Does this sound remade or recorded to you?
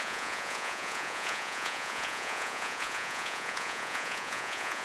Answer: remade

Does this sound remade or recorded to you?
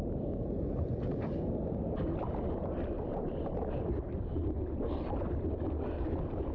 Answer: recorded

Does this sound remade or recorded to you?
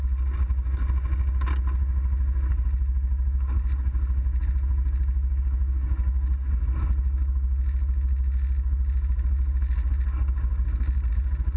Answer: recorded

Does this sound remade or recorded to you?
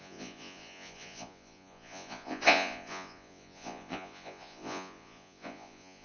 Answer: remade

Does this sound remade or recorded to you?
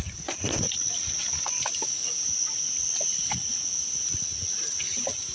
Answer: recorded